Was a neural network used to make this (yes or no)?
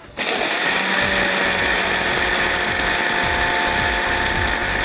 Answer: no